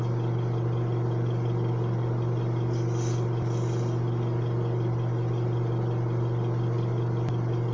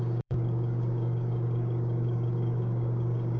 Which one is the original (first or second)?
first